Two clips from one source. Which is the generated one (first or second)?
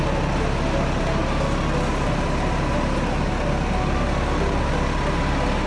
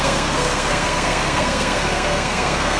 second